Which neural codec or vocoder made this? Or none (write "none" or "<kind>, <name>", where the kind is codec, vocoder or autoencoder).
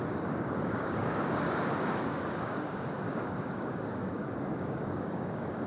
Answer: codec, DAC